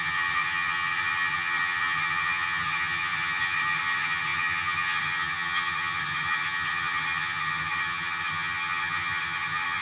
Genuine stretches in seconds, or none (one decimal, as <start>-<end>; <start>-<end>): none